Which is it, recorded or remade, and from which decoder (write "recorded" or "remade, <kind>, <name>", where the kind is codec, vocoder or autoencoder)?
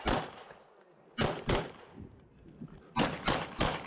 recorded